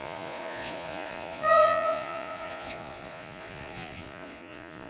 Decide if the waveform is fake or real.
fake